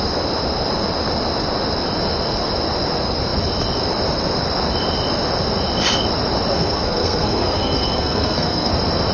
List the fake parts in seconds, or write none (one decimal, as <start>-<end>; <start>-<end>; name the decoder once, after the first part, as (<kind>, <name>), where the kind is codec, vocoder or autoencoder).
6.5-8.7 (codec, SNAC)